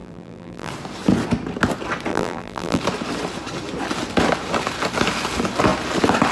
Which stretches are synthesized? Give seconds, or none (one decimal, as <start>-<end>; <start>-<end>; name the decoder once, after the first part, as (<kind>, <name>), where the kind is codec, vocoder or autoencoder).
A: 0.0-0.7 (vocoder, BigVGAN v2); 2.1-2.8